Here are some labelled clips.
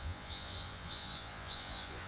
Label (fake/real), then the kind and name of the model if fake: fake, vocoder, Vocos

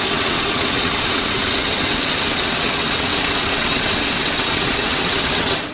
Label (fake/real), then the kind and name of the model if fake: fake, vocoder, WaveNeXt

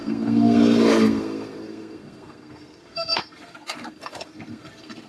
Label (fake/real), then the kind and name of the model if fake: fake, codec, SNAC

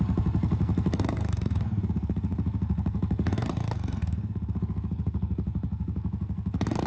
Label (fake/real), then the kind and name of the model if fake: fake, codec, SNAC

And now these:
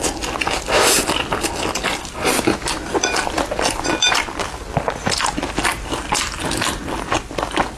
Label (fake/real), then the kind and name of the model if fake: real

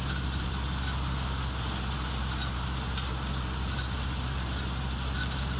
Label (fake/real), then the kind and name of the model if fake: fake, vocoder, BigVGAN v2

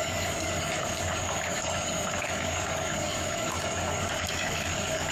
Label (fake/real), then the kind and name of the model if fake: fake, codec, DAC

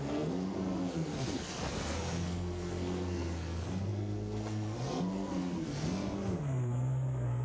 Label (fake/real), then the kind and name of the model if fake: fake, codec, SNAC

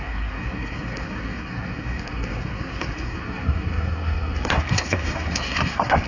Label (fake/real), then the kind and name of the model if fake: fake, codec, SNAC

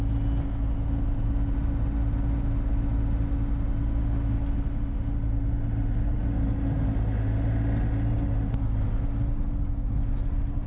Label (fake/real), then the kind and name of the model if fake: real